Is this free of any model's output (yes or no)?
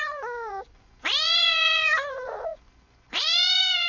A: no